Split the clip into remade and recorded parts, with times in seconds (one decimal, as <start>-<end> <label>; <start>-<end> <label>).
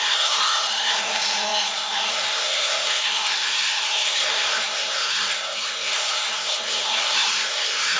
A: 0.0-8.0 remade